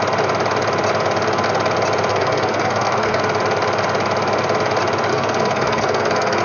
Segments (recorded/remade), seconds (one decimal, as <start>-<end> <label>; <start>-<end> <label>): 0.0-2.1 recorded; 2.1-3.2 remade; 3.2-5.1 recorded; 5.1-6.4 remade

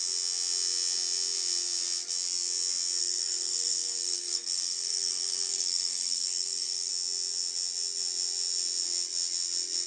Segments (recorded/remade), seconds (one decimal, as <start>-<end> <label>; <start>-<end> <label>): 0.0-3.0 recorded; 3.0-6.9 remade; 6.9-9.9 recorded

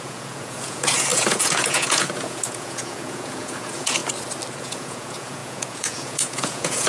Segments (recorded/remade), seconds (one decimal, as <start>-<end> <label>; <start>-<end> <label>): 0.0-4.0 remade; 4.0-4.6 recorded; 4.6-6.9 remade

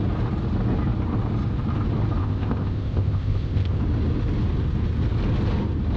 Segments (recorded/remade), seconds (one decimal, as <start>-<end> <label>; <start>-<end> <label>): 0.0-2.2 recorded; 2.2-3.8 remade; 3.8-6.0 recorded

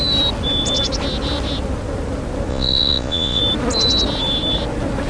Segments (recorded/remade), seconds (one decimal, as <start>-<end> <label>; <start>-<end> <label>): 0.0-2.5 recorded; 2.5-3.4 remade; 3.4-5.1 recorded